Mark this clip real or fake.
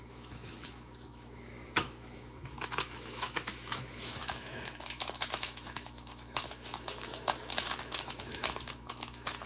fake